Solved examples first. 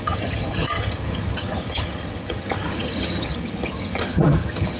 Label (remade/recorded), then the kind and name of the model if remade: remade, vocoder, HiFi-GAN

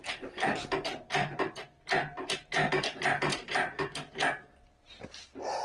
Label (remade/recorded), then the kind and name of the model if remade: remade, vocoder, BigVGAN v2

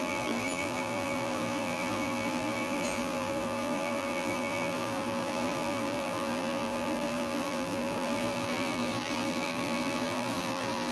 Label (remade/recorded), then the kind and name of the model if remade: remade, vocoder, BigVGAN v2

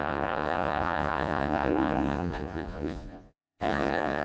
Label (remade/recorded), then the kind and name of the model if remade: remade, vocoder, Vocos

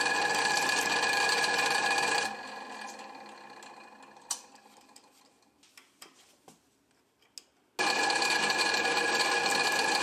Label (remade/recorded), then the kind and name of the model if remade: recorded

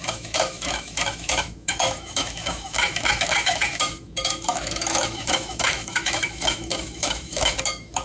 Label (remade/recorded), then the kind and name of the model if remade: remade, autoencoder, DAC-VAE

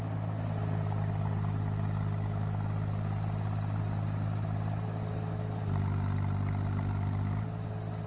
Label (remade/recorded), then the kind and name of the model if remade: recorded